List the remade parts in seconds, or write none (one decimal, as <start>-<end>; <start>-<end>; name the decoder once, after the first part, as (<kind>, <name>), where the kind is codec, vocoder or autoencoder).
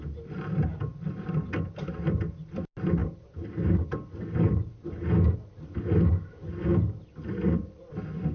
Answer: none